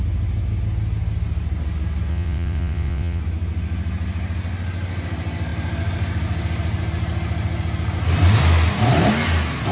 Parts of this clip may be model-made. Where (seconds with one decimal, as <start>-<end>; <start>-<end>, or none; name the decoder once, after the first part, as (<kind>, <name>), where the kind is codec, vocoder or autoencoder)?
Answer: 2.1-3.2 (vocoder, WaveNeXt)